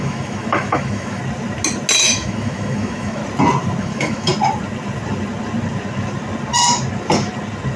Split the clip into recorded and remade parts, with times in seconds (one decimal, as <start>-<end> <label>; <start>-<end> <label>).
0.0-1.2 remade; 1.2-2.0 recorded; 2.0-3.2 remade; 3.2-3.8 recorded; 3.8-4.3 remade; 4.3-7.8 recorded

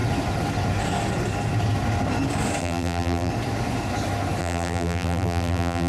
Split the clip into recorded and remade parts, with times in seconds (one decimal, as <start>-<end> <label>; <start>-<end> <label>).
0.0-2.6 recorded; 2.6-3.3 remade; 3.3-4.4 recorded; 4.4-5.9 remade

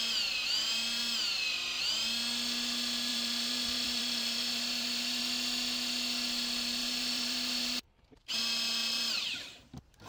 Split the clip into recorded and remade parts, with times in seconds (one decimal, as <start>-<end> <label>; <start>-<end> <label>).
0.0-3.1 recorded; 3.1-5.2 remade; 5.2-6.8 recorded; 6.8-8.4 remade; 8.4-8.8 recorded; 8.8-10.1 remade

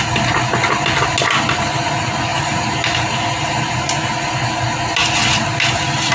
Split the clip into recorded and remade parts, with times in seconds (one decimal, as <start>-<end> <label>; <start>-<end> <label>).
0.0-2.3 recorded; 2.3-3.9 remade; 3.9-6.1 recorded

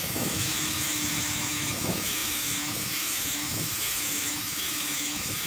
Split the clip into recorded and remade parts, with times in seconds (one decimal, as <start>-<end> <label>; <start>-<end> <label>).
0.0-5.5 remade

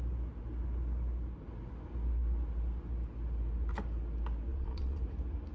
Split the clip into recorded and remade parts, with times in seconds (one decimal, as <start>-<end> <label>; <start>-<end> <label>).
0.0-4.5 recorded; 4.5-5.0 remade; 5.0-5.5 recorded

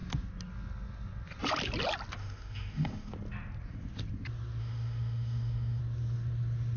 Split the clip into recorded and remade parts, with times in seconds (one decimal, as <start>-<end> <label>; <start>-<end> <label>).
0.0-2.2 recorded; 2.2-3.1 remade; 3.1-4.6 recorded; 4.6-5.8 remade; 5.8-6.8 recorded